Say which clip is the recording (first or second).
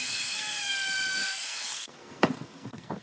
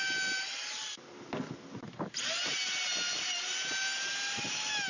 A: second